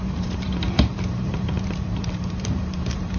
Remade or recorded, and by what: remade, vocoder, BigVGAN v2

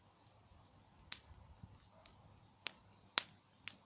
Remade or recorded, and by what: recorded